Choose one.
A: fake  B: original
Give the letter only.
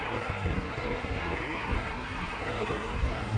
A